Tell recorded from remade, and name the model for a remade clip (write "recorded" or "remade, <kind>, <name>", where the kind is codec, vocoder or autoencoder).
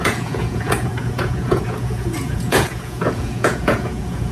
remade, vocoder, Vocos